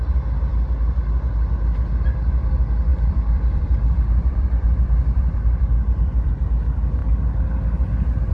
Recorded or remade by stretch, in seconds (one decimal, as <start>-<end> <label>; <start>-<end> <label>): 0.0-2.9 recorded; 2.9-6.3 remade; 6.3-8.3 recorded